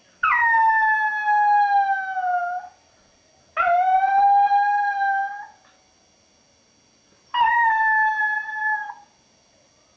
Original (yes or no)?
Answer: yes